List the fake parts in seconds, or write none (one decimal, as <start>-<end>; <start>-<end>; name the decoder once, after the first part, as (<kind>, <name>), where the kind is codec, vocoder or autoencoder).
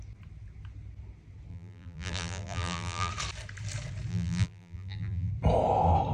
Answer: 1.5-3.1 (vocoder, BigVGAN v2); 4.1-5.3